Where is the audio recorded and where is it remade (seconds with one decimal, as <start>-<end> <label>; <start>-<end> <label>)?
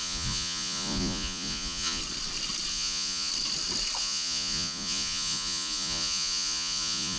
0.0-2.0 remade; 2.0-2.7 recorded; 2.7-3.3 remade; 3.3-4.0 recorded; 4.0-7.2 remade